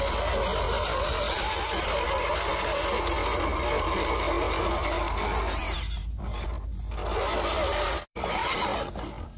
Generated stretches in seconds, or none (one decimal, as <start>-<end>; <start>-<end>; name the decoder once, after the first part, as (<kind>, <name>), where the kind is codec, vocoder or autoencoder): 8.1-8.9 (vocoder, BigVGAN v2)